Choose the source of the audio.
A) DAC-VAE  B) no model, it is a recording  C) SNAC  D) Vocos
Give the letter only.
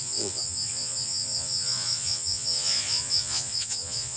D